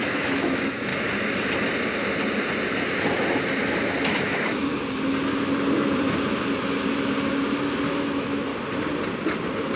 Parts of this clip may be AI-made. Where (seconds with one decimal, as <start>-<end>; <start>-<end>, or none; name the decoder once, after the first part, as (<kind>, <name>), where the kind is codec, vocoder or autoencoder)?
0.0-0.9 (autoencoder, DAC-VAE); 4.1-4.7; 7.9-8.5